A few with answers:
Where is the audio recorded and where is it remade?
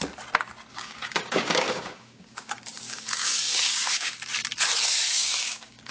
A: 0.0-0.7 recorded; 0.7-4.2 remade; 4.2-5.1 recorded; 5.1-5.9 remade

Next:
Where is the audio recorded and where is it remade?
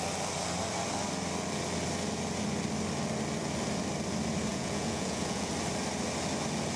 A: 0.0-4.5 recorded; 4.5-5.5 remade; 5.5-6.8 recorded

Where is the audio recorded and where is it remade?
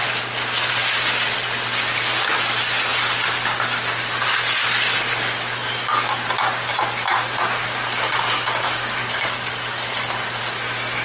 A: 0.0-9.0 recorded; 9.0-10.4 remade; 10.4-11.0 recorded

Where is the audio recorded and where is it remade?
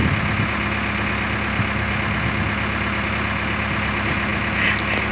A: 0.0-5.1 recorded